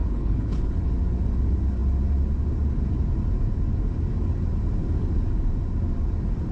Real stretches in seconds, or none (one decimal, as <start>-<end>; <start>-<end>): 0.9-6.5